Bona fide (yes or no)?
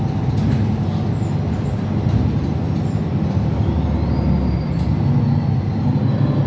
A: yes